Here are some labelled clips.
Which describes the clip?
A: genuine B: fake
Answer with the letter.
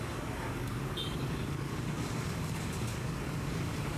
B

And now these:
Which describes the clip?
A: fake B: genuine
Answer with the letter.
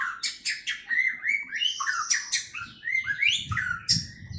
B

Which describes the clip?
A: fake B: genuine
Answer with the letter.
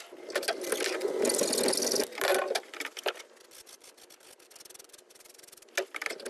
B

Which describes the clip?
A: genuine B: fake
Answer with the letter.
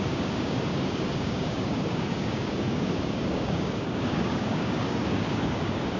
B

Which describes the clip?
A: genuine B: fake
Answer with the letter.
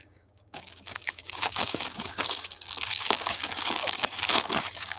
B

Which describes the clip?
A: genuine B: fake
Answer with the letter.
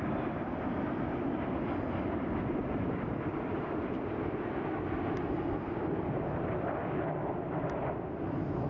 A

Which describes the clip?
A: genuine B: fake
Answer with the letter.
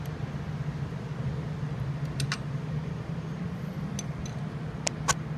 A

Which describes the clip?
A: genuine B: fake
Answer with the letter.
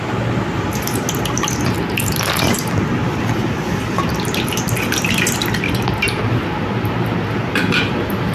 A